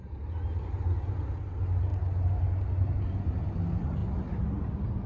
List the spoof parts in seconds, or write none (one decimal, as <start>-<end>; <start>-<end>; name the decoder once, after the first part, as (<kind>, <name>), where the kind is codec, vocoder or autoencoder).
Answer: none